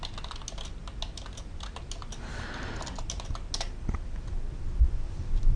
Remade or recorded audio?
recorded